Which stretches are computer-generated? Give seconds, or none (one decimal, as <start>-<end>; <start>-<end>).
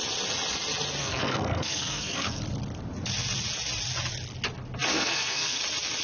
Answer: 1.0-2.4; 4.9-5.6